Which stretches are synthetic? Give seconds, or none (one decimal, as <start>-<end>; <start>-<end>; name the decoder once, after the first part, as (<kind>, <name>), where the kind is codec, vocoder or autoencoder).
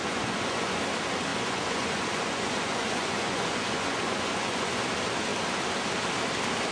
0.0-0.8 (vocoder, Vocos); 1.3-4.8